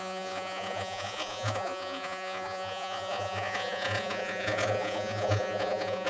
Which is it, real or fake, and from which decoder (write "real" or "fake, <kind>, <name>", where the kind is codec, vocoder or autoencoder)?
fake, vocoder, Vocos